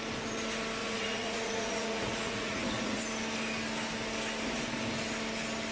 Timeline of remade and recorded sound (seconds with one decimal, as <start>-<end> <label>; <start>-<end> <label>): 0.0-0.8 recorded; 0.8-3.0 remade; 3.0-5.7 recorded